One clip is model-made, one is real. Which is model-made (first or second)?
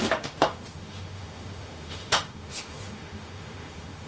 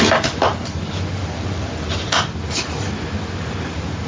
first